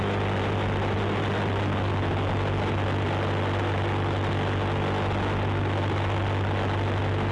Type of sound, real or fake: real